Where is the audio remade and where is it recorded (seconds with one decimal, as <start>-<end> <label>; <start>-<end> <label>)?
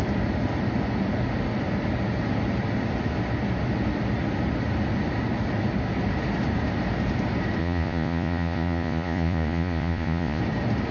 0.0-7.6 recorded; 7.6-10.4 remade; 10.4-10.9 recorded